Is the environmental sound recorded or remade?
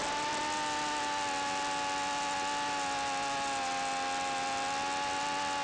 recorded